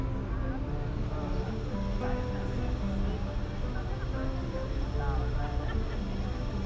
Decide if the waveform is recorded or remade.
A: recorded